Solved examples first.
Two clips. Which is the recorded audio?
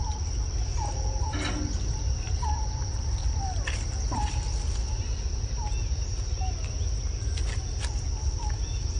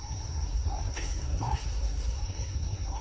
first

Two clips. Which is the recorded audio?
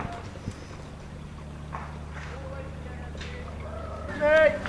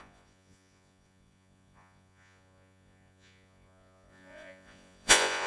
first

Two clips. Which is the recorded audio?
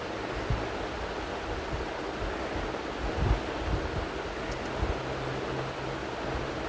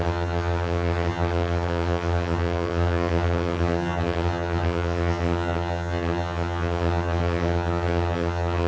first